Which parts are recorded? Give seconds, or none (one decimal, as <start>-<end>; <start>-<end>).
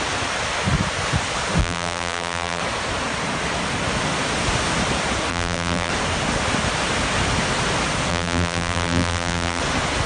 0.0-1.6; 2.6-5.3; 5.9-8.1; 9.6-10.1